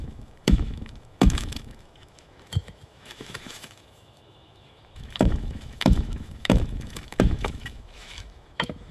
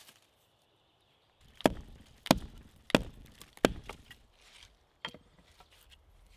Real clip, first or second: second